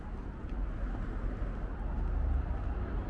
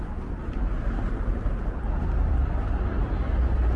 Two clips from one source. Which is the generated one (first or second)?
second